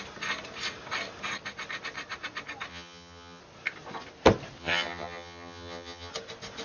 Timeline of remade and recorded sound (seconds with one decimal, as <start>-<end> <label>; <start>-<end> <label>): 0.0-2.7 recorded; 2.7-3.4 remade; 3.4-4.6 recorded; 4.6-6.1 remade; 6.1-6.6 recorded